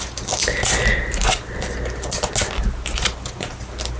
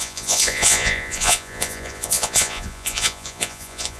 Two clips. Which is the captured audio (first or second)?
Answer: first